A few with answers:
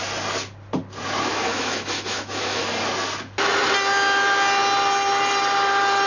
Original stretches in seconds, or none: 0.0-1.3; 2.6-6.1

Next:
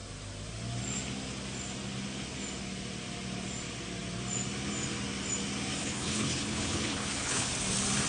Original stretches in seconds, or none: 0.0-5.8; 7.5-8.1

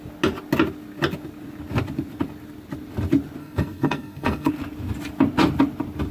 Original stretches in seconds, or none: 0.0-3.4; 4.5-6.1

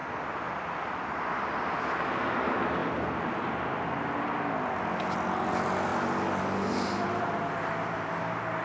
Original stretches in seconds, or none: 1.5-5.9; 8.2-8.6

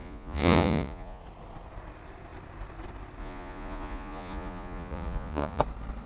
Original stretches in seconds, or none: 1.2-3.2; 5.6-6.1

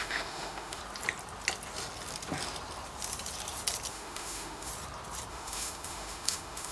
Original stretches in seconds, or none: 0.8-3.9; 4.7-5.3

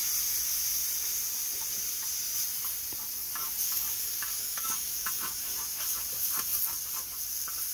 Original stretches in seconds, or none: 0.0-3.2; 5.4-7.7

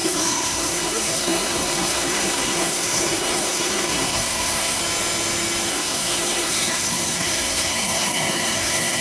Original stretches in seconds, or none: 4.8-5.7